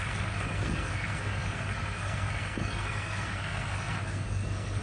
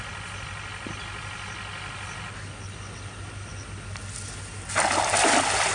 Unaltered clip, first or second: second